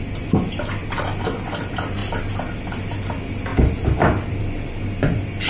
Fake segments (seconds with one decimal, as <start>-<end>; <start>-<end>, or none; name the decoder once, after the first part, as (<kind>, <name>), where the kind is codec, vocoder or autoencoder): none